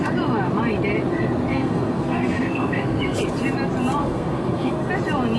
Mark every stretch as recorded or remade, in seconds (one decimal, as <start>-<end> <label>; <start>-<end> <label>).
0.0-1.5 recorded; 1.5-3.2 remade; 3.2-4.0 recorded; 4.0-4.9 remade; 4.9-5.4 recorded